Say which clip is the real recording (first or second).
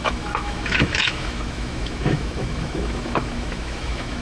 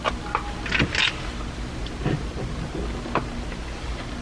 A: second